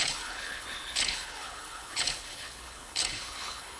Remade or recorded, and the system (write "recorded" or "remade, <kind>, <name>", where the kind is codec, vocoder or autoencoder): remade, codec, HILCodec